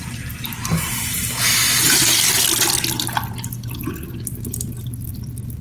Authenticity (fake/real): real